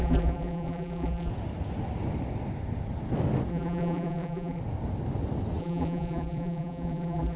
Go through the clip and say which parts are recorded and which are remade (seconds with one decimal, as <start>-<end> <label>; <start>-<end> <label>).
0.0-1.3 remade; 1.3-3.5 recorded; 3.5-4.6 remade; 4.6-5.6 recorded; 5.6-7.4 remade